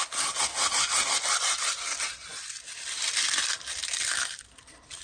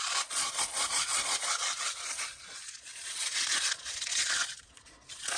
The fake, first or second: second